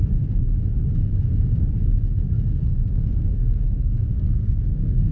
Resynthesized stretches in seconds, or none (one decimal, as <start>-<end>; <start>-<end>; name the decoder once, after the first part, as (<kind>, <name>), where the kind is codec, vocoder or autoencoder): 2.6-5.1 (codec, SNAC)